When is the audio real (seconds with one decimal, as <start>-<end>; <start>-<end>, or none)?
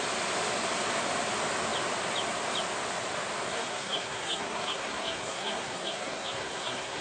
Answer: 0.0-3.5